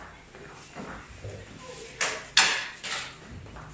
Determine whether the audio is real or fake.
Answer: real